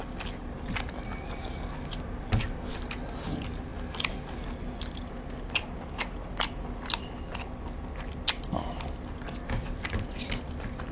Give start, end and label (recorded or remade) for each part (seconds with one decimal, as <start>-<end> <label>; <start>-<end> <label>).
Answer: 0.0-10.9 recorded